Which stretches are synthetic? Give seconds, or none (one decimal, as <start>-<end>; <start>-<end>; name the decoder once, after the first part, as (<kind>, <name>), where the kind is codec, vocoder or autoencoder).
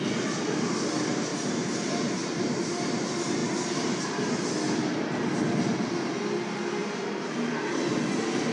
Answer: 1.3-2.7 (vocoder, BigVGAN v2); 6.8-7.8